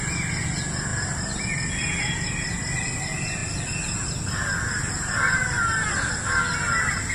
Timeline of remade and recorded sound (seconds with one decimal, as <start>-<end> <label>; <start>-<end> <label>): 0.0-7.1 recorded